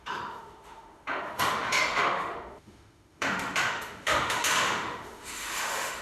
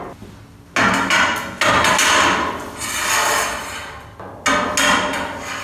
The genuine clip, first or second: second